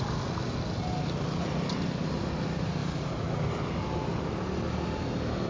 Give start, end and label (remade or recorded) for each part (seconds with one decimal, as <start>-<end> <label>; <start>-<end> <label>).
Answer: 0.0-5.5 recorded